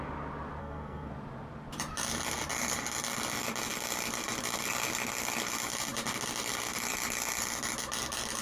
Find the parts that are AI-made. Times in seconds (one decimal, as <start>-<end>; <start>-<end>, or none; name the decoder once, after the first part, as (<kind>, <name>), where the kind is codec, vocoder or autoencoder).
0.6-1.1 (codec, SNAC)

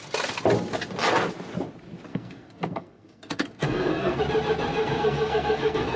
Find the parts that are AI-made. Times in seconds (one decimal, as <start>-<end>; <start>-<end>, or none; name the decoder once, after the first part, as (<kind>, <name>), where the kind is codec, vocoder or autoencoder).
2.1-4.2 (codec, SNAC); 4.7-6.0

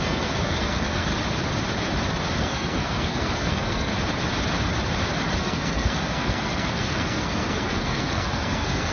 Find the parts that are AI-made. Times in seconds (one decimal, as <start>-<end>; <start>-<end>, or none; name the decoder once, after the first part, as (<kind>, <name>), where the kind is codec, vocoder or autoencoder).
0.0-1.1 (codec, SNAC); 2.4-3.9; 5.4-8.9